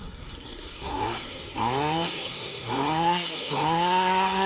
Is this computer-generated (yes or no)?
yes